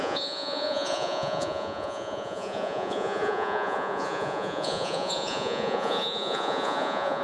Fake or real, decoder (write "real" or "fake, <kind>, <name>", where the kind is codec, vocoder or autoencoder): fake, vocoder, Vocos